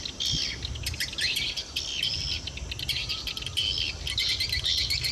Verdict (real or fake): real